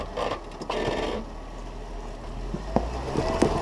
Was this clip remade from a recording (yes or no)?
no